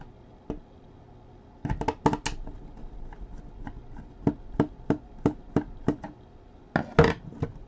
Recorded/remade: recorded